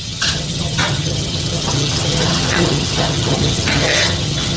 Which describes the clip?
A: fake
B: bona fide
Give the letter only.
A